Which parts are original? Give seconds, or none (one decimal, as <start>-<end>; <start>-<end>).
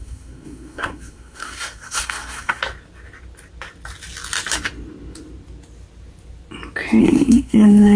2.6-7.0